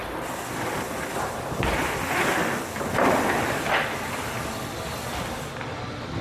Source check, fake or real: real